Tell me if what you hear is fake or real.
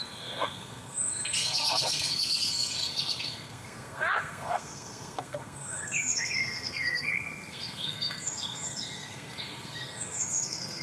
fake